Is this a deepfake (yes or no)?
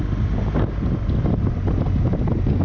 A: no